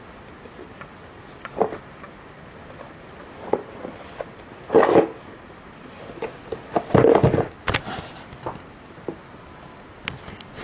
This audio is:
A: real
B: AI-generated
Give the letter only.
A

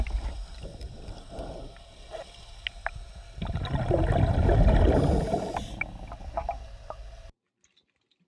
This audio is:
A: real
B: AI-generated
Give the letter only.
A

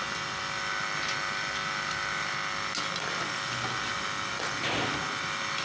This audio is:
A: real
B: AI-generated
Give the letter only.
A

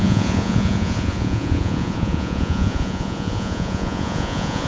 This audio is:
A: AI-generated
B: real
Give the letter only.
A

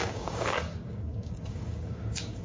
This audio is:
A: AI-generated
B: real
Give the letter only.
A